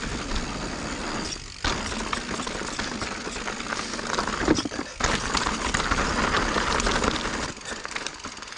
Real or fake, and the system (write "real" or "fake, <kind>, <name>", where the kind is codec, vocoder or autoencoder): real